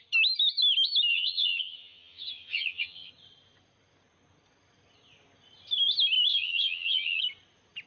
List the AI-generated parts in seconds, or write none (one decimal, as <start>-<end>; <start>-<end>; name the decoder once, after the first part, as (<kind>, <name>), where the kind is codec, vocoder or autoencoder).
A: 1.1-3.1 (vocoder, HiFi-GAN); 6.3-7.2